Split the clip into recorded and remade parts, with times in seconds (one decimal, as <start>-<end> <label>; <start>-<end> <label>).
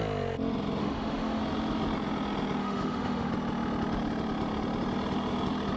0.0-0.8 recorded; 0.8-1.4 remade; 1.4-2.6 recorded; 2.6-3.3 remade; 3.3-5.8 recorded